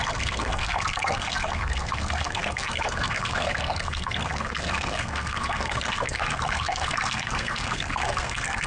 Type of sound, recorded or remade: remade